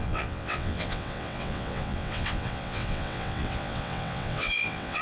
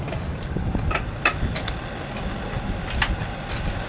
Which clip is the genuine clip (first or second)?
second